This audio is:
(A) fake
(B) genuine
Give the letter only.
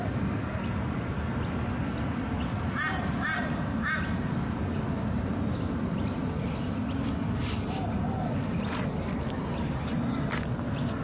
B